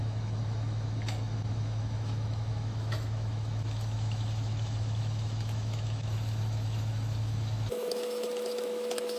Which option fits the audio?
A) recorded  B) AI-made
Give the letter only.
B